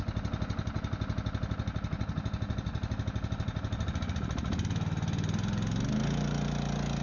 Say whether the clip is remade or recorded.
recorded